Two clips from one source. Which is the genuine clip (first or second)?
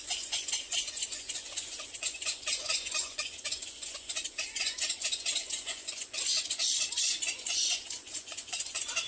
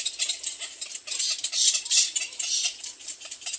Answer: second